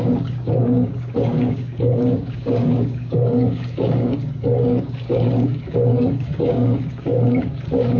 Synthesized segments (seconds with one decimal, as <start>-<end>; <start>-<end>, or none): 0.0-8.0